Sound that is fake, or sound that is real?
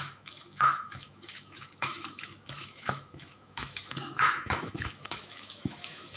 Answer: fake